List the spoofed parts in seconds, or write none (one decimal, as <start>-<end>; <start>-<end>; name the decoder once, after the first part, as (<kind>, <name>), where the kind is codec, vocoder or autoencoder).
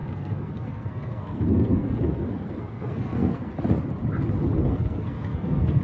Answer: 0.0-3.5 (codec, SNAC); 4.6-5.8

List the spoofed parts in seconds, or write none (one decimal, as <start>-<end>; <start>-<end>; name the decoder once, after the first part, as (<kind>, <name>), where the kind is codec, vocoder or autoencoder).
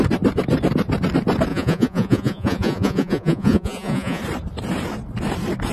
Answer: 1.5-4.2 (vocoder, Vocos)